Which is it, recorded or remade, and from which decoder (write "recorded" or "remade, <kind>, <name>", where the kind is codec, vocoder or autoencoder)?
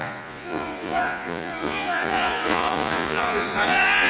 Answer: remade, vocoder, Vocos